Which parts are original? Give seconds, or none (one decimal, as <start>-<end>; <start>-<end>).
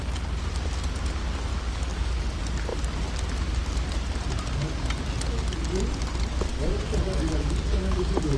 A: 0.0-1.5; 2.3-6.5